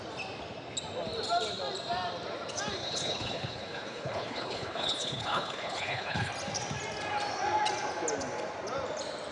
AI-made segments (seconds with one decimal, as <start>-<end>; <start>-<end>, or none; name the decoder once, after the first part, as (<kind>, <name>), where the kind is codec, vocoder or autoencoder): 2.8-6.3 (codec, HILCodec)